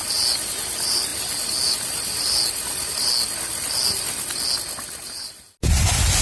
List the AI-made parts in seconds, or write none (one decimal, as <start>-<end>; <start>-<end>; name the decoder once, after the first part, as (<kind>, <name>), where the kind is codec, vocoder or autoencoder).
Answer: none